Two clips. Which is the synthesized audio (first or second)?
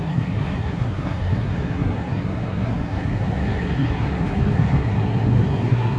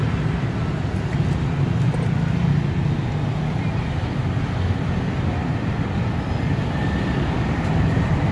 first